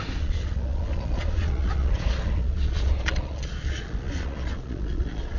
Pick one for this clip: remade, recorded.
remade